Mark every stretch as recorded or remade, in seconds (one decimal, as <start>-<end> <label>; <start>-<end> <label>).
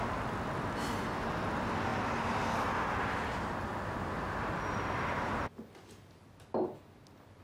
0.0-1.9 recorded; 1.9-2.4 remade; 2.4-7.4 recorded